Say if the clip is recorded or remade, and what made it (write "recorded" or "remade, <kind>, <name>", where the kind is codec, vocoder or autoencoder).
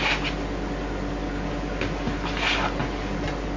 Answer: recorded